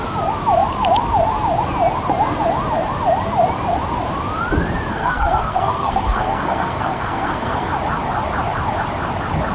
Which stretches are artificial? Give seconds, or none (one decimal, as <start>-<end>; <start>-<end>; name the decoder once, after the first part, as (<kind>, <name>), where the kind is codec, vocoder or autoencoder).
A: 4.9-7.7 (codec, SNAC)